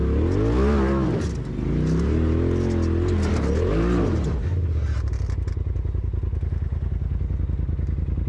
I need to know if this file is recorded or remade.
recorded